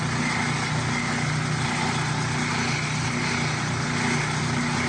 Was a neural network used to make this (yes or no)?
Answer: no